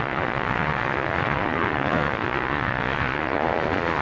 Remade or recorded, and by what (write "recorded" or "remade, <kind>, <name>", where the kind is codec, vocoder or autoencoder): remade, vocoder, Vocos